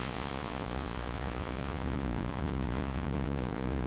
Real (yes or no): no